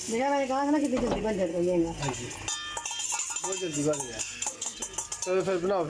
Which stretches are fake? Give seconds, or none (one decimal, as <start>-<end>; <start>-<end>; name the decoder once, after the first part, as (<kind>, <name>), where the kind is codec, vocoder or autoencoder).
1.5-2.0 (codec, SNAC); 4.2-4.8